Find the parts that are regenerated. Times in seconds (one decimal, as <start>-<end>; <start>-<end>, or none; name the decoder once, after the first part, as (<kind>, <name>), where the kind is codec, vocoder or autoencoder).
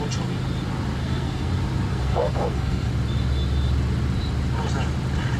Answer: 1.0-1.5 (codec, SNAC); 1.9-2.9